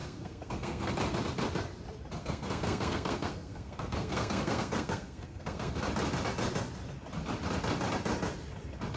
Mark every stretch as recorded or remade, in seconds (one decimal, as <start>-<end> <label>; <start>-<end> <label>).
0.0-0.9 remade; 0.9-2.2 recorded; 2.2-5.7 remade; 5.7-9.0 recorded